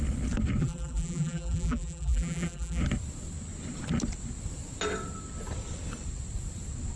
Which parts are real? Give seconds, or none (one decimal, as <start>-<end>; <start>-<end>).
0.0-0.6; 2.8-7.0